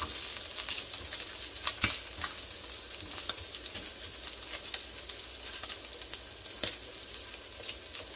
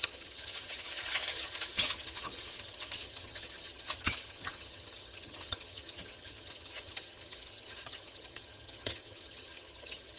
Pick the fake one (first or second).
second